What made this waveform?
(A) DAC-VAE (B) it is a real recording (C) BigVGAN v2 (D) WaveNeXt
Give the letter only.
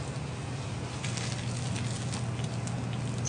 B